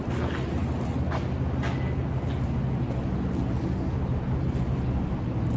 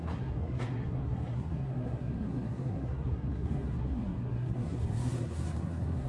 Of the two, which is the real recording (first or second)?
first